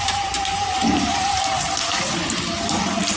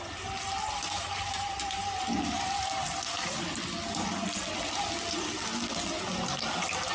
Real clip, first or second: second